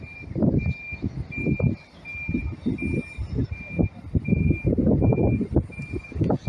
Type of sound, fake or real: real